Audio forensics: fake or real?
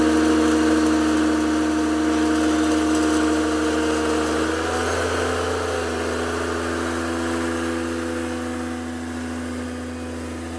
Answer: real